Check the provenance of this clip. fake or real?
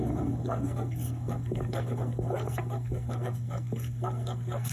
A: fake